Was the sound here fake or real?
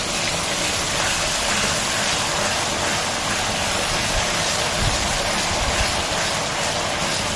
real